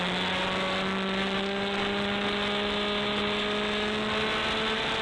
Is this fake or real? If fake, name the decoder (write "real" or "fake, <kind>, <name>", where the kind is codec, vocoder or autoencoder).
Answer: real